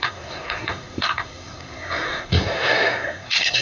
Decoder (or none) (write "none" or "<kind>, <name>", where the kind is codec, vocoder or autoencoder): codec, SNAC